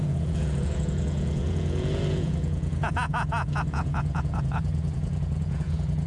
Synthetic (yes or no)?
yes